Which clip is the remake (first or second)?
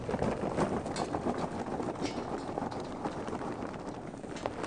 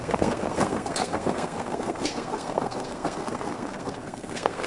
second